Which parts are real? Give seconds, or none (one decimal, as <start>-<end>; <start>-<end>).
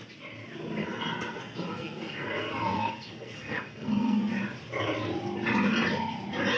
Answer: 0.0-0.8; 4.3-6.6